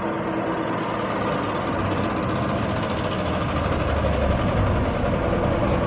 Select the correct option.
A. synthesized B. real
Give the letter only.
B